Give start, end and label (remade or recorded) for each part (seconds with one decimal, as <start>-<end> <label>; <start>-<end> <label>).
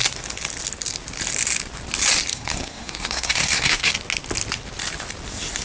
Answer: 0.0-2.3 recorded; 2.3-3.9 remade; 3.9-5.6 recorded